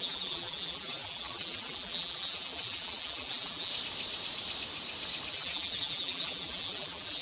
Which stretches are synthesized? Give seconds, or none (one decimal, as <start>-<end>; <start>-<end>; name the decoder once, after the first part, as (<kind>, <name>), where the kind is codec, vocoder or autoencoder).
0.0-3.7 (vocoder, BigVGAN v2); 5.3-7.2